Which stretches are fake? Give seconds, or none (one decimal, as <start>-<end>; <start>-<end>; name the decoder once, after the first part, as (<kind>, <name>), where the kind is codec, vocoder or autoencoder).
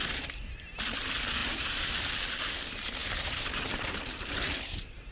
none